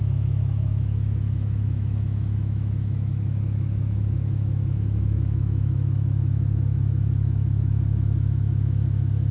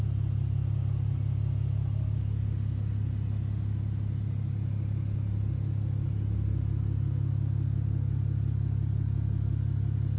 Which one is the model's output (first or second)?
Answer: first